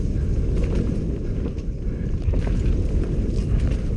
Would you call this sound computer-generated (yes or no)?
no